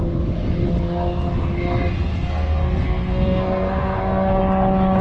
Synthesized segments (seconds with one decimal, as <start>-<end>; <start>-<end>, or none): 2.1-4.4